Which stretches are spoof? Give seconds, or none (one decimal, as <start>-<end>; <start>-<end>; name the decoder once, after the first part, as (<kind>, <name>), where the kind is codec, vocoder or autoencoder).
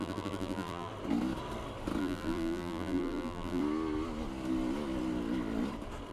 0.0-0.9 (vocoder, BigVGAN v2); 2.0-3.6